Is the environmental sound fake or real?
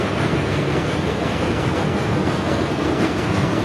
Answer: fake